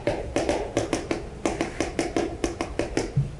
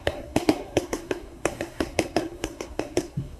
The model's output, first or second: second